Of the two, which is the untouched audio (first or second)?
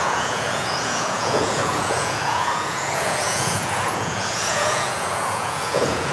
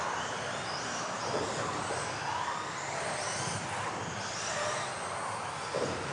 second